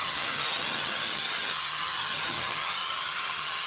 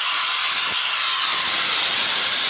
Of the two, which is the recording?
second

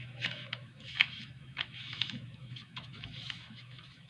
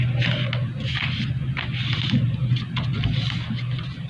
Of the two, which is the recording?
second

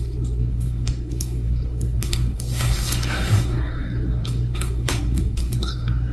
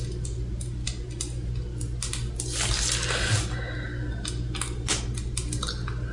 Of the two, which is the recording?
second